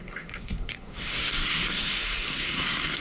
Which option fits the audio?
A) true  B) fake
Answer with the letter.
B